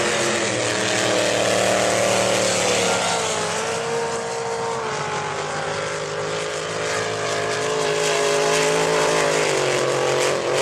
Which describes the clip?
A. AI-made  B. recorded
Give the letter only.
B